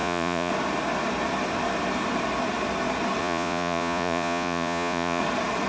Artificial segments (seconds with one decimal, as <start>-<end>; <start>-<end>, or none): 0.0-0.5; 3.2-5.2